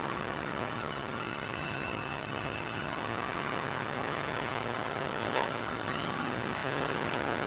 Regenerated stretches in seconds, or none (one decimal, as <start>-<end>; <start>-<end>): 0.0-7.5